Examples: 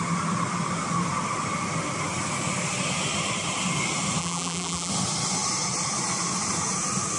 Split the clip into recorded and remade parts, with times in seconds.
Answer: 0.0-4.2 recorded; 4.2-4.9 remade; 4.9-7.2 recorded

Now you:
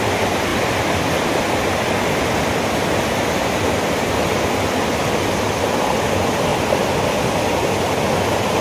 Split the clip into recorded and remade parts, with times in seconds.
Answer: 0.0-8.6 recorded

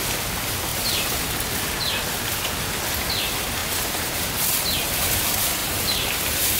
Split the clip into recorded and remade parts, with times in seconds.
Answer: 0.0-0.7 recorded; 0.7-1.2 remade; 1.2-3.6 recorded; 3.6-4.3 remade; 4.3-5.6 recorded; 5.6-6.6 remade

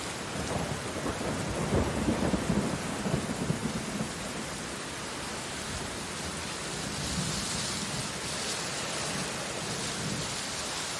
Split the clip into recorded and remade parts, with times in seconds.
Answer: 0.0-3.6 recorded; 3.6-5.8 remade; 5.8-11.0 recorded

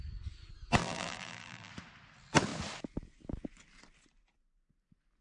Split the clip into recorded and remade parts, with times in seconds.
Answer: 0.0-0.8 recorded; 0.8-1.7 remade; 1.7-5.2 recorded

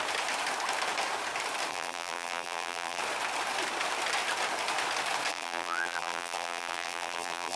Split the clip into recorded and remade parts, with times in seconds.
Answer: 0.0-1.7 recorded; 1.7-3.0 remade; 3.0-5.3 recorded; 5.3-7.6 remade

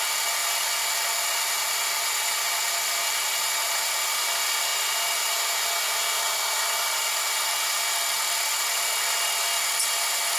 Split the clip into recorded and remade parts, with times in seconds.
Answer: 0.0-0.4 recorded; 0.4-1.6 remade; 1.6-10.4 recorded